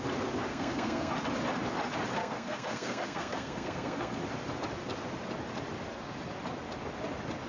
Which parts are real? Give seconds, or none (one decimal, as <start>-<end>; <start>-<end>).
0.0-0.5; 1.1-2.2; 4.2-7.5